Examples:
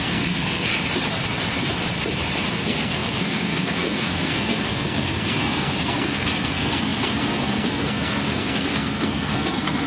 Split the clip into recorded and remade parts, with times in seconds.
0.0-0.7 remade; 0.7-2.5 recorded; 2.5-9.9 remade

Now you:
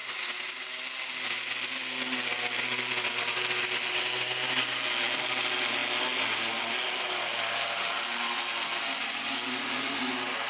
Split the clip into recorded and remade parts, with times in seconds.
0.0-10.5 recorded

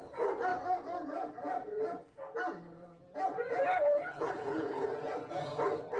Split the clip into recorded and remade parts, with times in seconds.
0.0-3.7 recorded; 3.7-4.9 remade; 4.9-6.0 recorded